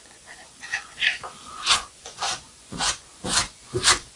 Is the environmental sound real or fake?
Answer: fake